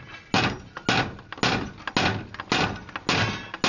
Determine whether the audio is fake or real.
real